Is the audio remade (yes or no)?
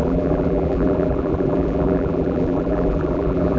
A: yes